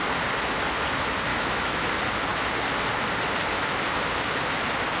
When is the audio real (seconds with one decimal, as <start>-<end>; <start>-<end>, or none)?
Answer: 0.0-1.3; 1.9-5.0